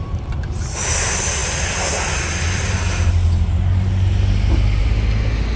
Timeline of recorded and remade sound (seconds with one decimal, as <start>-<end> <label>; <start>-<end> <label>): 0.0-5.6 recorded